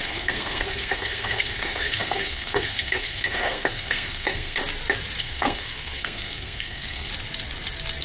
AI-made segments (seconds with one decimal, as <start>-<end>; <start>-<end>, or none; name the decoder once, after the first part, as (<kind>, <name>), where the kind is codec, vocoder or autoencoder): 0.0-4.6 (codec, SNAC); 5.2-7.1

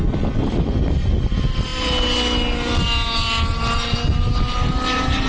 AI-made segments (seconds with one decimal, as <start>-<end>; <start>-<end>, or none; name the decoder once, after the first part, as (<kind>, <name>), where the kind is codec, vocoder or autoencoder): none

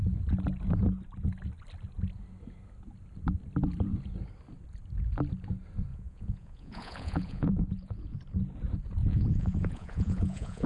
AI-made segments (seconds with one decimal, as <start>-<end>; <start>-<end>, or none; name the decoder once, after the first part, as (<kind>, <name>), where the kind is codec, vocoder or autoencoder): 5.9-8.2 (vocoder, Vocos); 9.0-10.7

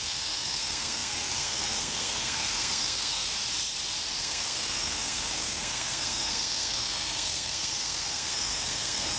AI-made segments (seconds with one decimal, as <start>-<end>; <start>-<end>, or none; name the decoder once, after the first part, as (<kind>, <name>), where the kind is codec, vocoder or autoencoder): 0.0-3.3 (codec, SNAC); 4.2-9.2

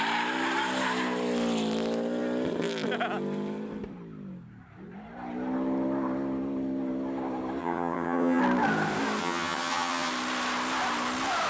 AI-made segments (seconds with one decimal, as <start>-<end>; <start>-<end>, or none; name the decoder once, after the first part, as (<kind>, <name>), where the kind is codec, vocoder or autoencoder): 7.6-8.4 (vocoder, HiFi-GAN); 9.2-10.1

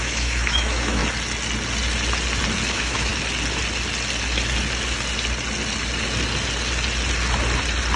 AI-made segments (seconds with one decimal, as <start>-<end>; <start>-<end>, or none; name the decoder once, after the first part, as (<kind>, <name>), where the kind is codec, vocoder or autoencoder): 0.0-1.0 (autoencoder, DAC-VAE); 2.7-3.1

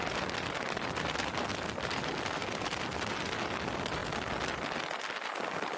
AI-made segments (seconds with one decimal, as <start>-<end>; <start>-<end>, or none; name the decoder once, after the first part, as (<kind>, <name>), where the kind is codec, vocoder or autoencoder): none